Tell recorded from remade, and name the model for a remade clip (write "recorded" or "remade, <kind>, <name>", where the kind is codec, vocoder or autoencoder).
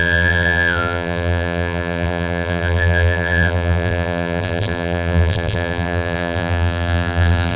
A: remade, vocoder, BigVGAN v2